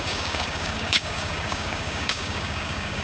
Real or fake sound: fake